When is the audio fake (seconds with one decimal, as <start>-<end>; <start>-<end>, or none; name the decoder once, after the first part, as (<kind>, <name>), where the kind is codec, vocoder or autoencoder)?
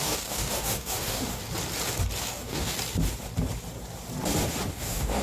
0.0-1.4 (codec, DAC); 2.2-2.8; 4.7-5.2